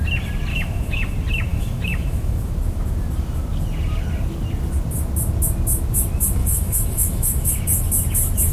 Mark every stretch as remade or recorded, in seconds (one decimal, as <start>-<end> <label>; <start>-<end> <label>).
0.0-0.5 recorded; 0.5-1.1 remade; 1.1-1.5 recorded; 1.5-2.5 remade; 2.5-6.4 recorded; 6.4-7.5 remade; 7.5-8.5 recorded